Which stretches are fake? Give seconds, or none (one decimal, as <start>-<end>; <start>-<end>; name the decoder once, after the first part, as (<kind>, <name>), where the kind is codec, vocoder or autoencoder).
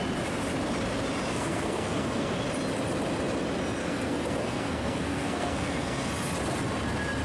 1.3-2.4 (codec, SNAC); 3.8-6.1